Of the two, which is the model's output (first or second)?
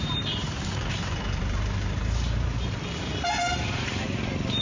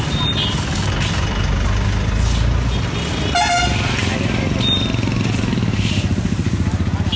first